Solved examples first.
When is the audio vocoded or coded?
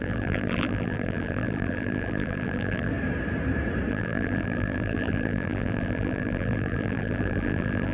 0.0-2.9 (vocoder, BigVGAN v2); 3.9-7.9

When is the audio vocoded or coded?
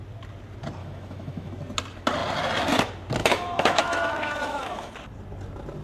0.8-1.5 (autoencoder, DAC-VAE); 3.2-4.9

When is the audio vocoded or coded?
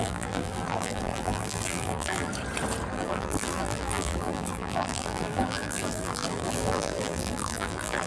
0.0-2.3 (vocoder, BigVGAN v2); 2.9-8.1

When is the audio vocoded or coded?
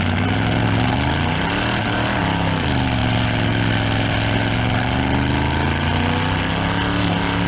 none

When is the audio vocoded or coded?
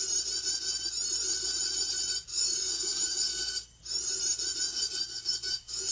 2.3-3.8 (codec, DAC); 4.7-5.9